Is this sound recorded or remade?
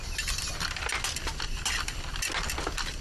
recorded